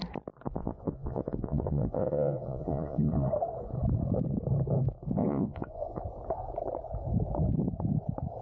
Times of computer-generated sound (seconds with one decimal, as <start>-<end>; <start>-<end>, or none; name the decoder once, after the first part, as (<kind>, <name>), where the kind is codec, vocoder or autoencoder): 0.6-3.3 (vocoder, Vocos); 5.2-6.0